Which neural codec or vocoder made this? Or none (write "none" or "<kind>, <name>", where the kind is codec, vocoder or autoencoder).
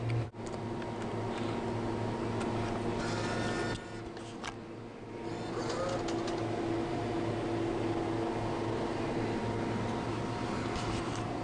none